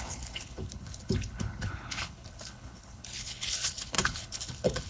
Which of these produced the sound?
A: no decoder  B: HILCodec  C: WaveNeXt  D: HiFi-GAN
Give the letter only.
B